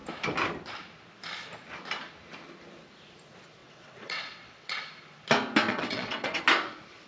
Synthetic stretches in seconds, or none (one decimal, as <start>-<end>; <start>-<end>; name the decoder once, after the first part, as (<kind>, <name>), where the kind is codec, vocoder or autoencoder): 3.6-4.8 (vocoder, WaveNeXt); 5.7-6.4